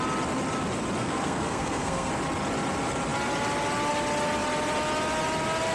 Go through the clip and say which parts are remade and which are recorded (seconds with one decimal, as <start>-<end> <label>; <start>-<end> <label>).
0.0-1.0 recorded; 1.0-2.1 remade; 2.1-5.7 recorded